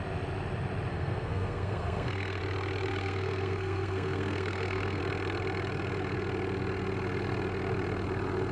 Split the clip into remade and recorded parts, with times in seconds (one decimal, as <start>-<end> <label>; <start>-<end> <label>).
0.0-0.9 recorded; 0.9-2.4 remade; 2.4-2.9 recorded; 2.9-5.0 remade; 5.0-8.5 recorded

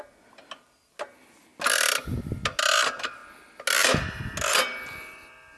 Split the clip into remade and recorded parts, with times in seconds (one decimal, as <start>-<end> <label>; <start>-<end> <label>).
0.0-5.6 recorded

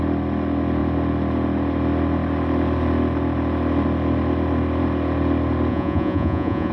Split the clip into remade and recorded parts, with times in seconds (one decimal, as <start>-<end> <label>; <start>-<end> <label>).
0.0-5.7 recorded; 5.7-6.7 remade

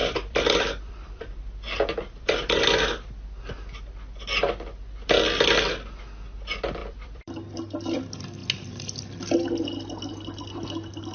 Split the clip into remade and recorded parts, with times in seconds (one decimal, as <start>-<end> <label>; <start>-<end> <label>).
0.0-3.1 remade; 3.1-6.8 recorded; 6.8-7.3 remade; 7.3-11.1 recorded

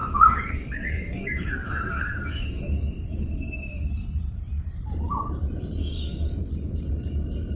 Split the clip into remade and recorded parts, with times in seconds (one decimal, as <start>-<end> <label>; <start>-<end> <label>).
0.0-3.9 remade; 3.9-5.8 recorded; 5.8-6.5 remade; 6.5-7.6 recorded

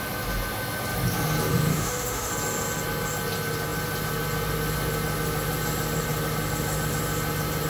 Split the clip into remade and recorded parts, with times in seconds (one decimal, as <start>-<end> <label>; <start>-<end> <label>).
0.0-1.7 recorded; 1.7-2.3 remade; 2.3-7.7 recorded

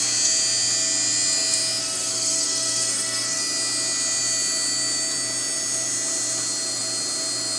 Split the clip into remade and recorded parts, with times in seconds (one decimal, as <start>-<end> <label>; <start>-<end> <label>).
0.0-1.8 recorded; 1.8-3.4 remade; 3.4-7.6 recorded